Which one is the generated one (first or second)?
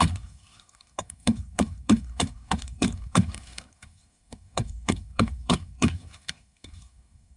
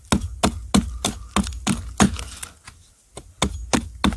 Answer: first